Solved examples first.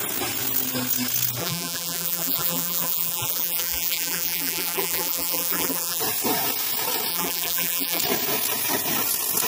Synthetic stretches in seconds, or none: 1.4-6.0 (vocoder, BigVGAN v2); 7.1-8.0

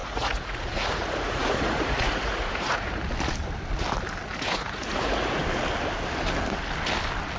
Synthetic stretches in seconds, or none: 0.0-3.0 (vocoder, Vocos); 4.3-5.4

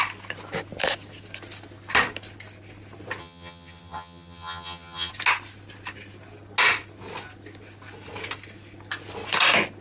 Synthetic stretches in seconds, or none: 3.2-5.1 (vocoder, HiFi-GAN)

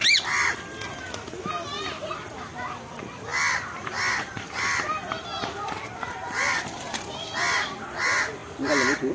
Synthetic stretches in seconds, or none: 3.3-4.5 (vocoder, BigVGAN v2); 8.4-9.1

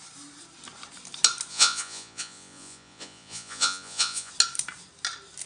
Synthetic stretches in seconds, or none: 1.5-4.3 (vocoder, Vocos)

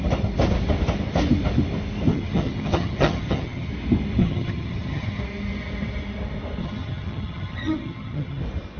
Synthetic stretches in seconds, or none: 2.1-3.7 (vocoder, HiFi-GAN); 4.2-5.2; 6.6-8.4

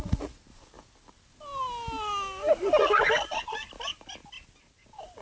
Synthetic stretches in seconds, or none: 0.0-0.5 (vocoder, Vocos); 2.8-3.6

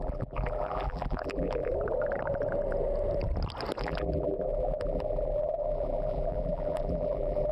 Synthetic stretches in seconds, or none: 0.0-1.7 (vocoder, BigVGAN v2); 3.8-7.5